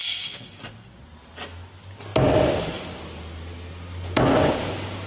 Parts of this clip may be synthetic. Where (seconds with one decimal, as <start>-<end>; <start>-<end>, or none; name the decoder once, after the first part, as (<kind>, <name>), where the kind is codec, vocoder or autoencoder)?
none